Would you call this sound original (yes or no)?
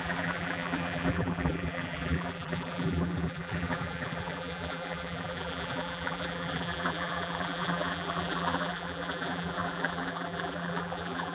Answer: no